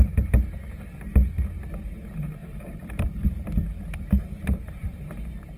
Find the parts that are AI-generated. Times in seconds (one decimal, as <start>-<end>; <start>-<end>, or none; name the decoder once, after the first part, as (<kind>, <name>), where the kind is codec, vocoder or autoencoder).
2.4-5.6 (vocoder, BigVGAN v2)